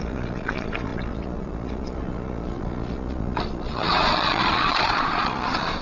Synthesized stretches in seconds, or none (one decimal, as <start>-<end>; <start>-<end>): 0.0-5.8